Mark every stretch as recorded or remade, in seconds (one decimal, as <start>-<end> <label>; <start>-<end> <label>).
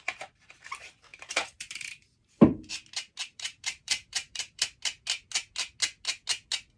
0.0-1.1 recorded; 1.1-2.7 remade; 2.7-3.3 recorded; 3.3-4.6 remade; 4.6-6.8 recorded